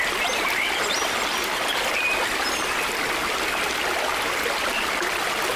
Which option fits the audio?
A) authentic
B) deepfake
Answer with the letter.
A